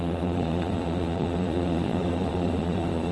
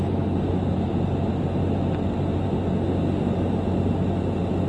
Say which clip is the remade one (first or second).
first